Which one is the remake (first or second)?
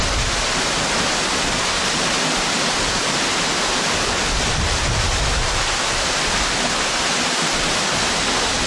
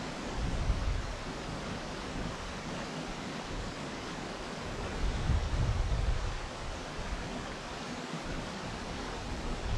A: second